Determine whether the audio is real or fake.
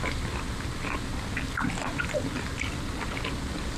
real